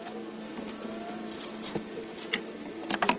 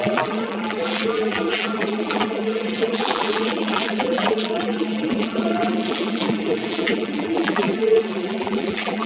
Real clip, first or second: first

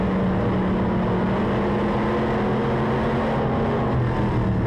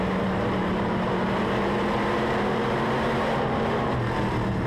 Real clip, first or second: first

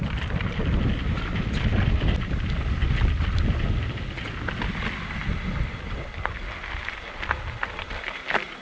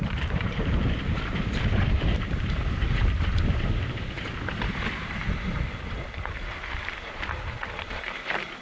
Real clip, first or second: first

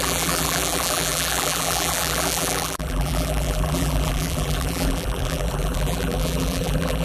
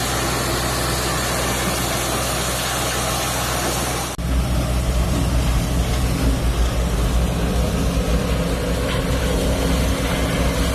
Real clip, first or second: second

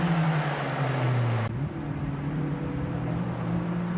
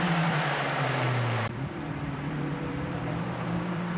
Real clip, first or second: first